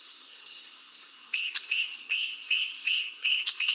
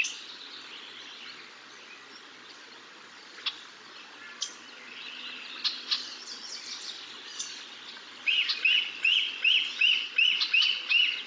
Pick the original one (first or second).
second